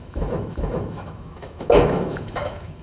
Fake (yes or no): yes